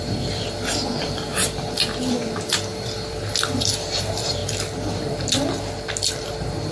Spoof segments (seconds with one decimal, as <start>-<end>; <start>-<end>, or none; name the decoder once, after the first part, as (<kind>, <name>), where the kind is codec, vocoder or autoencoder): 0.0-1.3 (vocoder, BigVGAN v2); 2.0-4.4